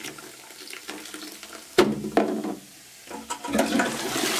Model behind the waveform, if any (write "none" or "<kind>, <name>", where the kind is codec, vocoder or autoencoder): none